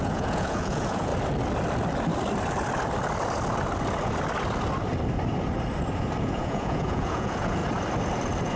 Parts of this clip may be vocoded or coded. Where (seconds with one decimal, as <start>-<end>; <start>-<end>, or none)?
0.0-1.1; 6.2-7.6